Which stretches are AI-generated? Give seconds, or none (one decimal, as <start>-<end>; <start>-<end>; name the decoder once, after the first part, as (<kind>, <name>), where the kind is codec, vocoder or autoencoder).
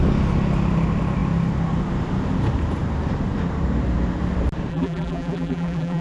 4.7-6.0 (vocoder, BigVGAN v2)